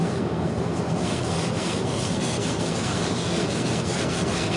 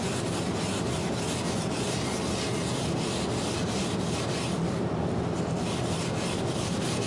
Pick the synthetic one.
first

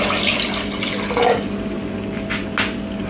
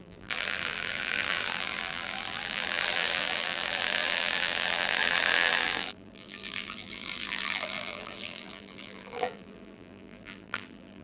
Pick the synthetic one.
second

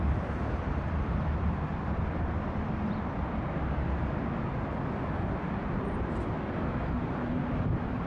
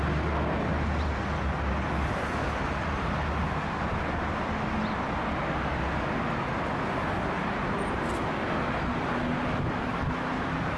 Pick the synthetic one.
first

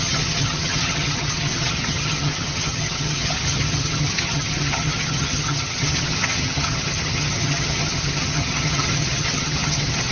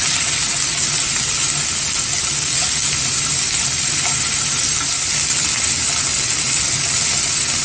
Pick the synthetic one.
first